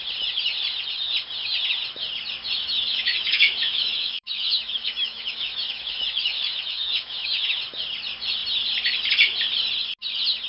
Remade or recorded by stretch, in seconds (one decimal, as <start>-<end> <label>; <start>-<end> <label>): 0.0-2.6 recorded; 2.6-7.6 remade; 7.6-10.5 recorded